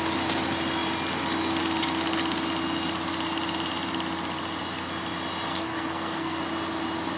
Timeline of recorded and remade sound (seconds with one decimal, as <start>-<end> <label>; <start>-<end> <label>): 0.0-5.5 recorded; 5.5-6.4 remade; 6.4-7.2 recorded